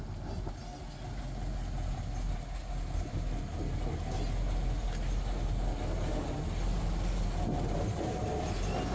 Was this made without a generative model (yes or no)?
yes